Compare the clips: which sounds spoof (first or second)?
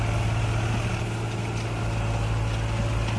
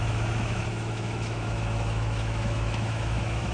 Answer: second